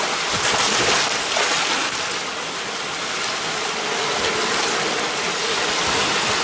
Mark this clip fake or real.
real